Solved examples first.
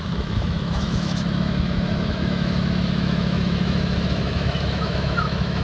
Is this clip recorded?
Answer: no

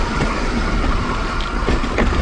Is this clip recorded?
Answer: yes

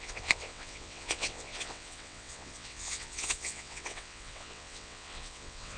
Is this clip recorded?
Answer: no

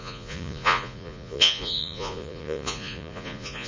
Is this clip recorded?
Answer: no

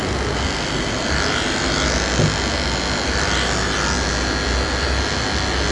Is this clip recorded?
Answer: yes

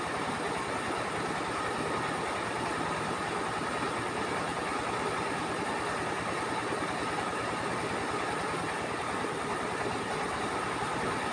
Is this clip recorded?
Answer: yes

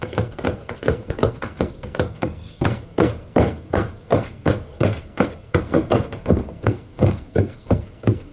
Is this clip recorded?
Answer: no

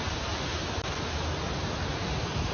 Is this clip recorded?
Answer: yes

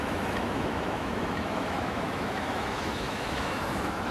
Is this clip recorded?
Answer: no